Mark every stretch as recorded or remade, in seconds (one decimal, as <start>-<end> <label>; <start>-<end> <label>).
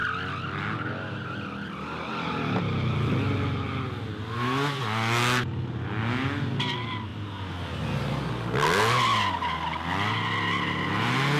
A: 0.0-11.4 recorded